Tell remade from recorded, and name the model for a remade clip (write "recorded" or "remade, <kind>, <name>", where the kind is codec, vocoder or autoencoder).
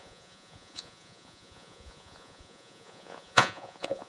remade, vocoder, Vocos